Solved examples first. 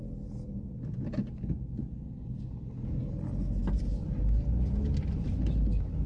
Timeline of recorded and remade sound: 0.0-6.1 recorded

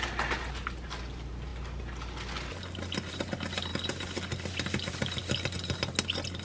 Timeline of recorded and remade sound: 0.0-6.4 recorded

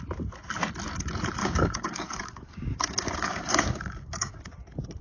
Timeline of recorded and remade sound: 0.0-1.4 recorded; 1.4-4.4 remade; 4.4-5.0 recorded